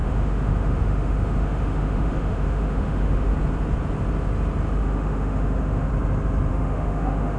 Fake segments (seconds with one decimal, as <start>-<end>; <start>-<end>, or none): 0.0-3.3; 4.8-5.9; 6.5-7.4